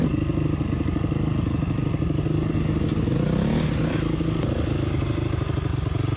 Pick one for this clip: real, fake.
real